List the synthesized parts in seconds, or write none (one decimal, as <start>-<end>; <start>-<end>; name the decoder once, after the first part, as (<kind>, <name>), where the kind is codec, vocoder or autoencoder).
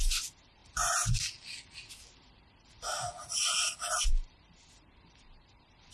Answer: none